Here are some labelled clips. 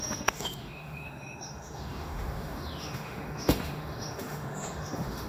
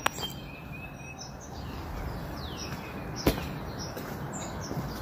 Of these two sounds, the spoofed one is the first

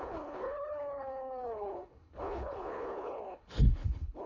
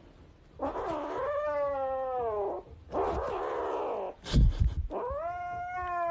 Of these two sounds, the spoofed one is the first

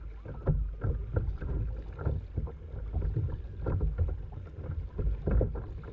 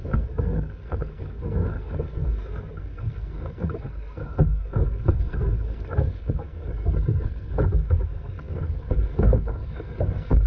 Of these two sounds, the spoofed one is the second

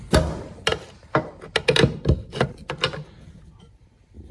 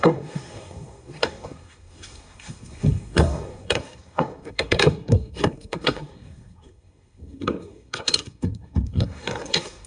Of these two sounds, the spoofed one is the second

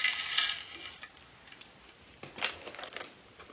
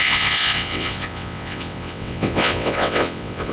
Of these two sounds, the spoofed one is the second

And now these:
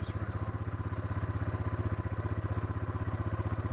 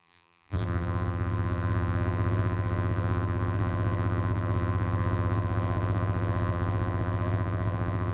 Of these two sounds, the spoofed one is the second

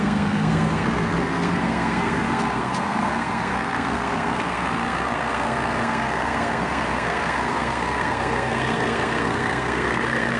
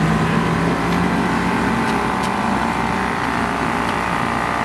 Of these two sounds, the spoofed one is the first